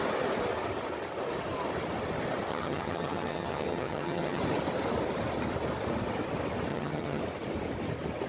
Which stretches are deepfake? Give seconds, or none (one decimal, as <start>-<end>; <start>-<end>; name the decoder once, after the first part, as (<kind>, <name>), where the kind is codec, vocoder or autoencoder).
2.5-4.4 (vocoder, HiFi-GAN); 6.7-7.2